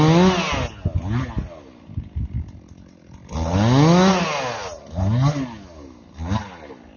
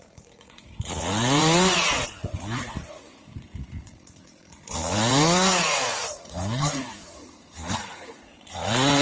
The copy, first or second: second